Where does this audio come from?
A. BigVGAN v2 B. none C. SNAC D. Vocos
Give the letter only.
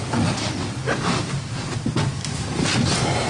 B